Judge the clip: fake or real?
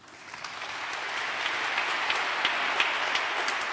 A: real